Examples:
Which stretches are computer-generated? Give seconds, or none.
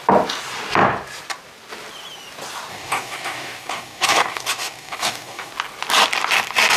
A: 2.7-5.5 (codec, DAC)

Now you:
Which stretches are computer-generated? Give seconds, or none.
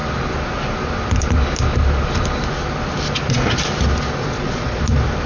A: 4.2-4.8 (vocoder, Vocos)